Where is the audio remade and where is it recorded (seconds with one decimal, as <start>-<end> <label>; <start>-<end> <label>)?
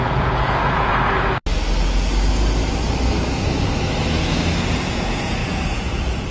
0.0-0.9 remade; 0.9-4.7 recorded; 4.7-6.3 remade